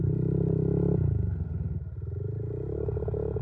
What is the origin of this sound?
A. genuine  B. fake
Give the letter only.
A